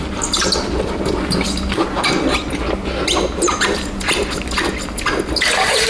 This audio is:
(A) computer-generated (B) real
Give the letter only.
B